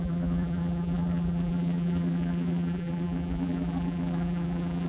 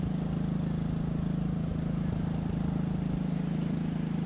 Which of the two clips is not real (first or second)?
first